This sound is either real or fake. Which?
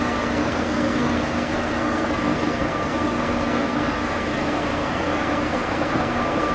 fake